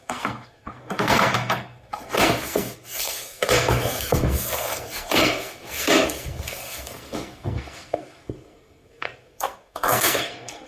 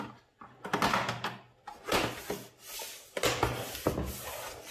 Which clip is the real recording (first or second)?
second